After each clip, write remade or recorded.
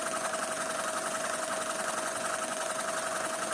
remade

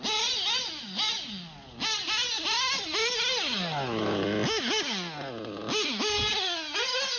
recorded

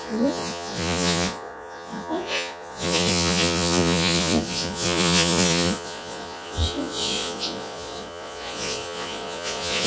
remade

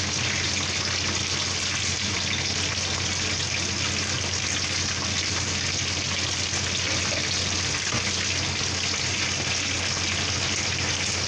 recorded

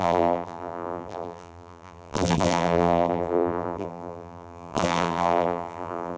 remade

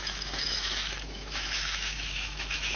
remade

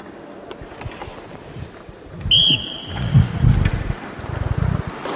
recorded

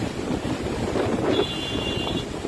recorded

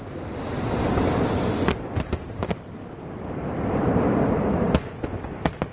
recorded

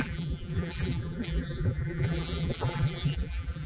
remade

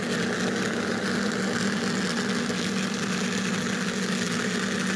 recorded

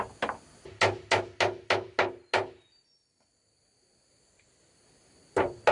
recorded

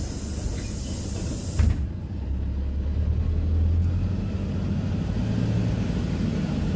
recorded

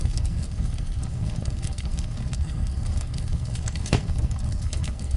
remade